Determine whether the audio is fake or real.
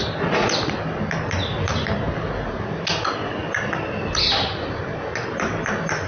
real